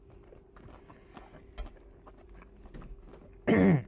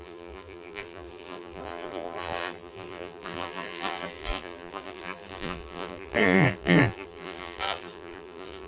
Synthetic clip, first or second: second